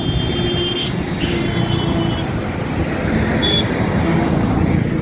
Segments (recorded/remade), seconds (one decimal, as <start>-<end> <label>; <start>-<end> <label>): 0.0-0.8 recorded; 0.8-1.4 remade; 1.4-3.4 recorded; 3.4-4.5 remade; 4.5-5.0 recorded